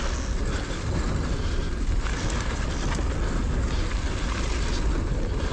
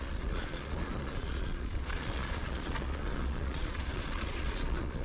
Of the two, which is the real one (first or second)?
first